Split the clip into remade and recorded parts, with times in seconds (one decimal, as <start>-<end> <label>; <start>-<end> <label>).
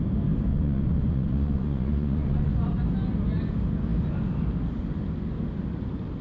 0.0-0.5 recorded; 0.5-2.5 remade; 2.5-6.2 recorded